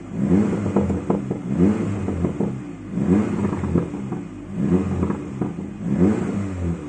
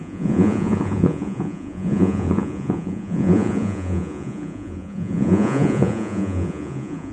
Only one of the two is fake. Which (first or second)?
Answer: second